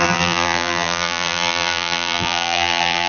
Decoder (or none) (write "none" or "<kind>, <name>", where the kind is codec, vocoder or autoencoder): vocoder, BigVGAN v2